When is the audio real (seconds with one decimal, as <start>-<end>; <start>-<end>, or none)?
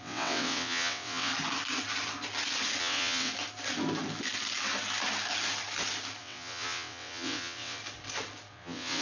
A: 1.3-2.8; 3.3-6.2; 7.8-8.5